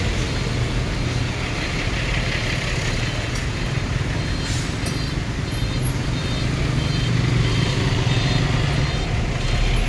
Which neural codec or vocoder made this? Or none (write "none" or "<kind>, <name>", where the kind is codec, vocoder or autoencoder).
none